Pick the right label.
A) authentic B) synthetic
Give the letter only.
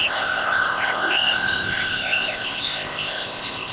B